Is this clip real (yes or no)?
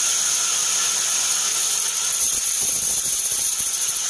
yes